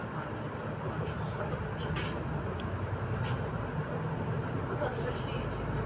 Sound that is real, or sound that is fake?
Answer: real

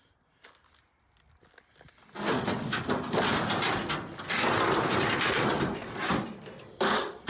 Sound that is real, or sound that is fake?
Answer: real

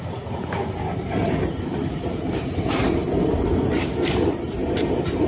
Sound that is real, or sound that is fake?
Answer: fake